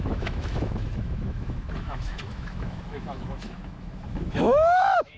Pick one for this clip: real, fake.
fake